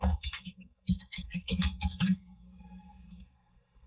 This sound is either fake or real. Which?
fake